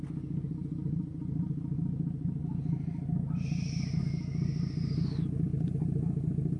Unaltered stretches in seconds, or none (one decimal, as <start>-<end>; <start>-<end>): 0.0-6.6